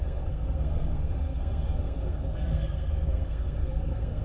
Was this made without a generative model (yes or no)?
no